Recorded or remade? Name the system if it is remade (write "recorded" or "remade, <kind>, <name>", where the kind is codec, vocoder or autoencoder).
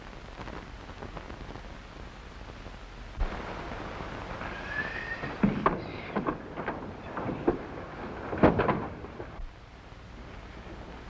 recorded